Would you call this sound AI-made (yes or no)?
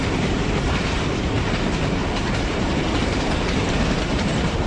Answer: yes